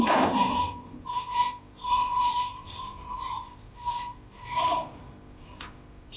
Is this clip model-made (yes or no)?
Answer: no